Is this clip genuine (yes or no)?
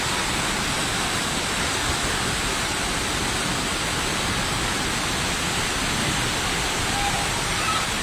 yes